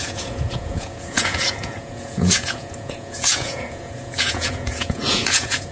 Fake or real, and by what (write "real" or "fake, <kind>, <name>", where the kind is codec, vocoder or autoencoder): fake, vocoder, Vocos